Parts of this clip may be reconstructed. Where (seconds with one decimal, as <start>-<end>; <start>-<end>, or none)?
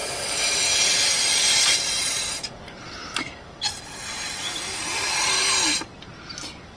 none